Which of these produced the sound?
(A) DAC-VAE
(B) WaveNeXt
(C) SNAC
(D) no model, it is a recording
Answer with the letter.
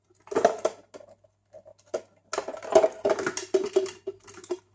D